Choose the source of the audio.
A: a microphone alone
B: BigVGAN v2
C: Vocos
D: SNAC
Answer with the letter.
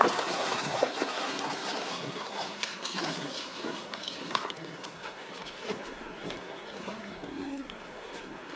D